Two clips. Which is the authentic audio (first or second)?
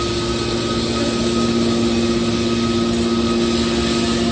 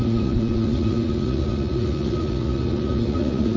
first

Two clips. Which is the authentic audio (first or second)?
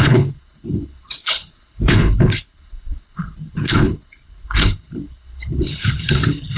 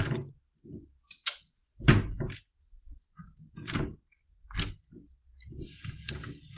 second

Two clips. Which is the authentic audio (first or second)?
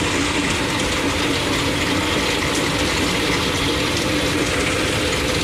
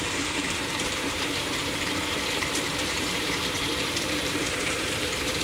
first